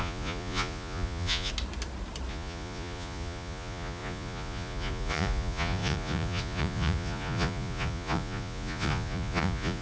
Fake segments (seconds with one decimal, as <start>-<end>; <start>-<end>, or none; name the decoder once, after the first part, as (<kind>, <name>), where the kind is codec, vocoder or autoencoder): 0.0-1.5 (vocoder, Vocos); 2.3-9.8